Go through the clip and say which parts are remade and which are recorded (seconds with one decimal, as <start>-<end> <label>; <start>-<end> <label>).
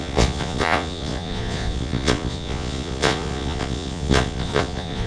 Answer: 0.0-5.1 remade